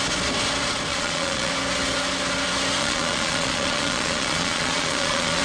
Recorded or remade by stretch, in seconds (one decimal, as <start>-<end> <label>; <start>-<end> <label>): 0.0-0.9 recorded; 0.9-1.5 remade; 1.5-2.8 recorded; 2.8-5.4 remade